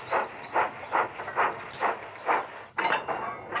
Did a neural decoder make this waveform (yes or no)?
no